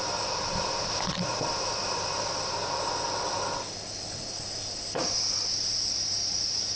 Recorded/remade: recorded